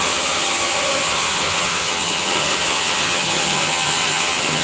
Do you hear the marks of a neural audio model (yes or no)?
yes